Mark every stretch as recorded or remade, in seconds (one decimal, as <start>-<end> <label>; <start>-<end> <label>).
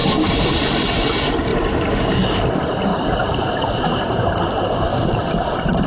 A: 0.0-0.5 remade; 0.5-2.9 recorded; 2.9-5.0 remade; 5.0-5.9 recorded